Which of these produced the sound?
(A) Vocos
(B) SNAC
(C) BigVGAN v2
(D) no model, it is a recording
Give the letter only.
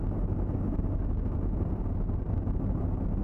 D